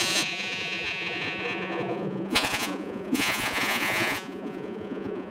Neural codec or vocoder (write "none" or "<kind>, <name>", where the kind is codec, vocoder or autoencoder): vocoder, Vocos